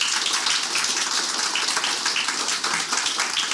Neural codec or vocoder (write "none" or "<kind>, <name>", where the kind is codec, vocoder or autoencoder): none